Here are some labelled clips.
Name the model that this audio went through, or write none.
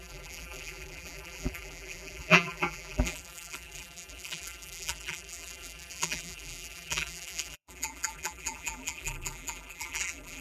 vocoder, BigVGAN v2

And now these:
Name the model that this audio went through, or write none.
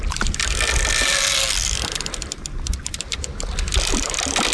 none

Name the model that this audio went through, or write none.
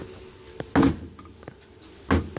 none